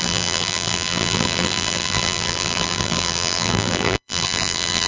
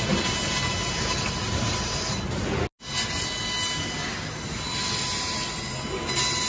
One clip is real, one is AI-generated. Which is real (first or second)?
second